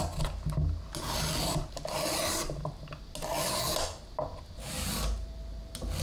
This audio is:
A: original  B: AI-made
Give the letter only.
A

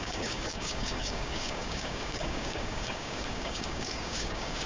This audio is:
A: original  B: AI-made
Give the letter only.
B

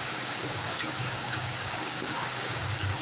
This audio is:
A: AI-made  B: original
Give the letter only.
A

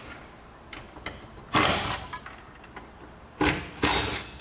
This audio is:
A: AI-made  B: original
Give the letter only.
B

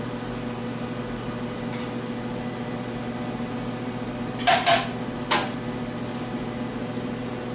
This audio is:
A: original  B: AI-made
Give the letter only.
A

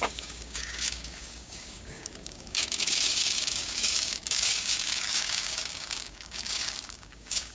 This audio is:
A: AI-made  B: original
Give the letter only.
A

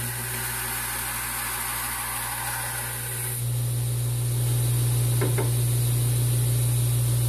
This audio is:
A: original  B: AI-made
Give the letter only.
A